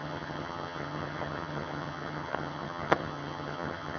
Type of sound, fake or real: fake